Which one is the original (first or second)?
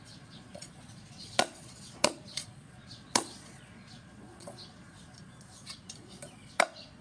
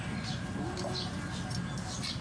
second